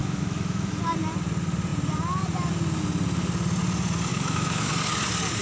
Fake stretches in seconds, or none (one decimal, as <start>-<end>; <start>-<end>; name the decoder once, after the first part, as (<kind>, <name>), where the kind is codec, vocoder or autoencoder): 0.0-0.8 (autoencoder, DAC-VAE); 4.1-4.7